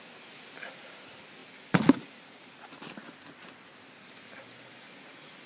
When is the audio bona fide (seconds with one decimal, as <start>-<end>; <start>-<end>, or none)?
0.0-5.5